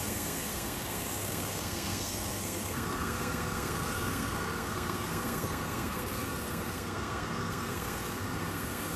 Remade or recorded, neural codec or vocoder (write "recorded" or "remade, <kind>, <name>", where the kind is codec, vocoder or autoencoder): remade, codec, SNAC